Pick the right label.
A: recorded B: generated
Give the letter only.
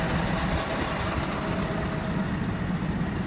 A